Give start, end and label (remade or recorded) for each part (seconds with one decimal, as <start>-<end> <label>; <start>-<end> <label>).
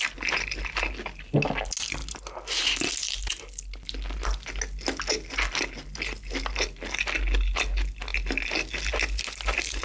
0.0-9.8 recorded